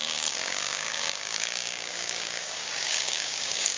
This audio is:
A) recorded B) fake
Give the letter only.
B